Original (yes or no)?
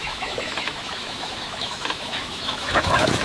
no